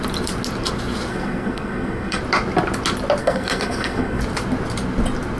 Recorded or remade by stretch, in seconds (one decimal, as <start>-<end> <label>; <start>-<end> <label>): 0.0-1.1 recorded; 1.1-2.2 remade; 2.2-3.2 recorded; 3.2-4.2 remade; 4.2-5.4 recorded

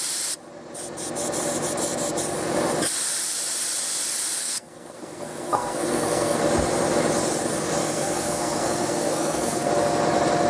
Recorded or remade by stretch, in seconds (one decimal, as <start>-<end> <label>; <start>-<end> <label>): 0.0-4.4 recorded; 4.4-6.4 remade; 6.4-7.8 recorded; 7.8-9.7 remade; 9.7-10.5 recorded

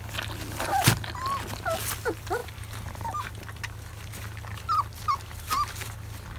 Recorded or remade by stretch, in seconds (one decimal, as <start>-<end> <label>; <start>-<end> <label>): 0.0-6.4 recorded

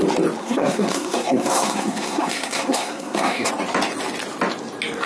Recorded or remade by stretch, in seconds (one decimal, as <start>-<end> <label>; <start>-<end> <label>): 0.0-0.4 recorded; 0.4-3.5 remade; 3.5-5.1 recorded